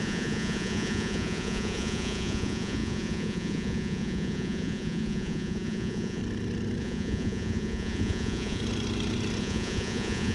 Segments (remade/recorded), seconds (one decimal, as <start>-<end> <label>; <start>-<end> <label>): 0.0-6.2 remade; 6.2-6.8 recorded; 6.8-8.6 remade; 8.6-9.4 recorded; 9.4-10.3 remade